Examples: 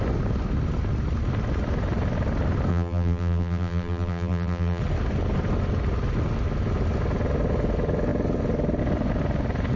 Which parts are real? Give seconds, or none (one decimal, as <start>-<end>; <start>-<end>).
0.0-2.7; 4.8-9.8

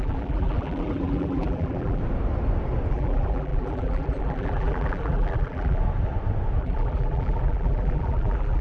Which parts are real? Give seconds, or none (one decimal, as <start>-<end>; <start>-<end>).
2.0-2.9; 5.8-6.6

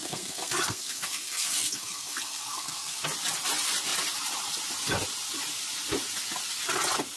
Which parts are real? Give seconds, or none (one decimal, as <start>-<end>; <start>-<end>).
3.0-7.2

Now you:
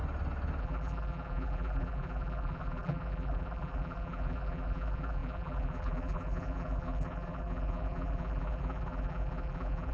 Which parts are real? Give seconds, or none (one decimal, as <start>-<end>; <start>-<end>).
0.0-0.6